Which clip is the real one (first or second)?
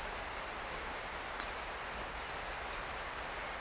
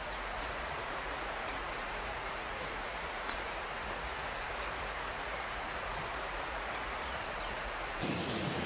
first